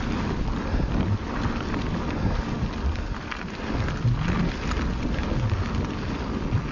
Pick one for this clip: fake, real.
real